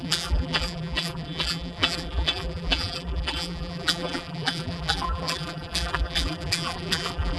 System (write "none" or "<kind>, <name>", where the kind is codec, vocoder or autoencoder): vocoder, BigVGAN v2